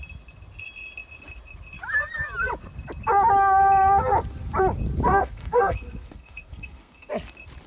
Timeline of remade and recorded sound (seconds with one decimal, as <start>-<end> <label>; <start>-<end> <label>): 0.0-5.1 recorded; 5.1-7.1 remade; 7.1-7.7 recorded